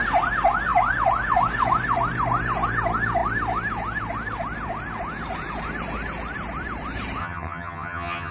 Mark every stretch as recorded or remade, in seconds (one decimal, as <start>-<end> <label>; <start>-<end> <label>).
0.0-7.2 recorded; 7.2-8.3 remade